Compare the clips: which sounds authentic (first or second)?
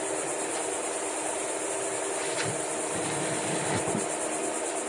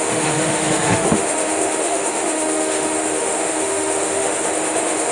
first